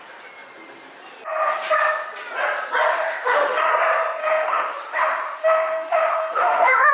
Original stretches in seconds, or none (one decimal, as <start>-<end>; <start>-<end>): 0.0-2.9; 3.7-4.2